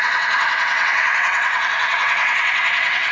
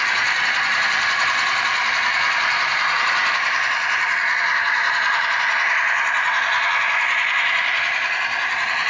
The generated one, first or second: first